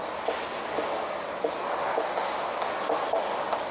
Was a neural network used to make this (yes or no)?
no